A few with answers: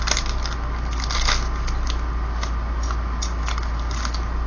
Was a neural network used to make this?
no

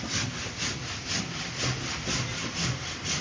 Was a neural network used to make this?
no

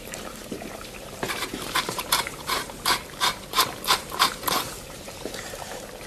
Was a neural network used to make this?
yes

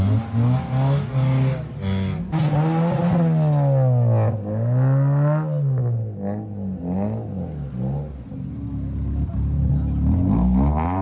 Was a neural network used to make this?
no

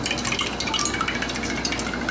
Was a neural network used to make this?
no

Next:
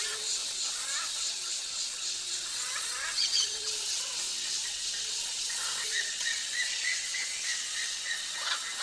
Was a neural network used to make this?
yes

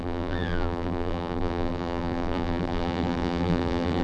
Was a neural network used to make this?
yes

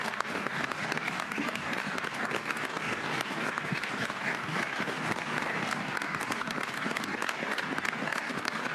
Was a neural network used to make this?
yes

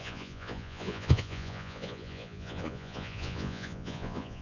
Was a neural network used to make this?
yes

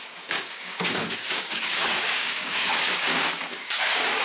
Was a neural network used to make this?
yes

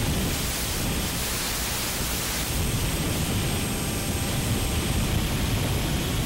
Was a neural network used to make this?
no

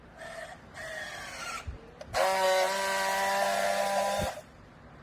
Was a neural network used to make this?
no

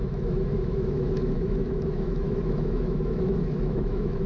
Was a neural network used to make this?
yes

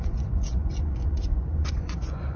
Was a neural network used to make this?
yes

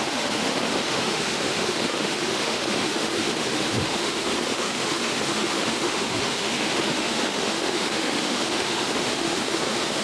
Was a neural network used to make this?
yes